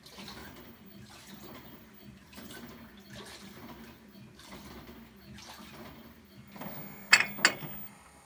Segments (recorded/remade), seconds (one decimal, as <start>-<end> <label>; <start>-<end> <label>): 0.0-0.4 recorded; 0.4-2.7 remade; 2.7-8.3 recorded

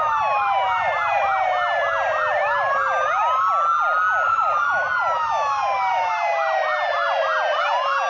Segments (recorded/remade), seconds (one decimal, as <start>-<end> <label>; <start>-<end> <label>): 0.0-8.1 recorded

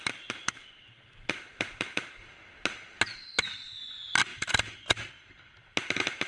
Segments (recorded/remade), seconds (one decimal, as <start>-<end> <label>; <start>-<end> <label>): 0.0-6.3 recorded

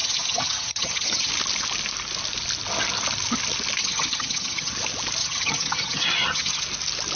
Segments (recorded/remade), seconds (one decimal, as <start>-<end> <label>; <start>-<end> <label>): 0.0-1.3 remade; 1.3-3.8 recorded; 3.8-4.7 remade; 4.7-5.2 recorded; 5.2-6.6 remade; 6.6-7.2 recorded

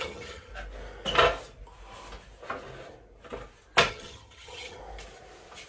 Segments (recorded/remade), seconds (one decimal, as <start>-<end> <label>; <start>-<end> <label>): 0.0-0.5 remade; 0.5-3.9 recorded; 3.9-4.8 remade; 4.8-5.7 recorded

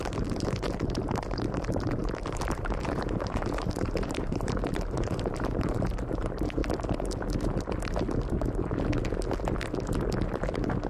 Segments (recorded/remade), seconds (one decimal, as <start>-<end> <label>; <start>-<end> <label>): 0.0-6.6 remade; 6.6-10.9 recorded

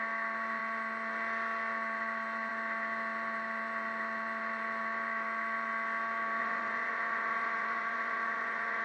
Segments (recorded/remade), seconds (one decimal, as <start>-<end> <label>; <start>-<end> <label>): 0.0-6.4 recorded; 6.4-8.8 remade

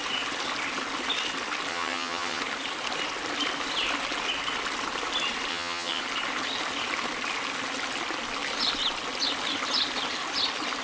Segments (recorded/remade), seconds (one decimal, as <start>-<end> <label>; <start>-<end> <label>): 0.0-1.7 recorded; 1.7-2.4 remade; 2.4-5.5 recorded; 5.5-6.0 remade; 6.0-10.8 recorded